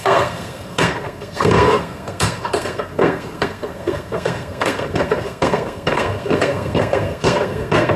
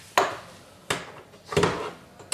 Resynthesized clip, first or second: first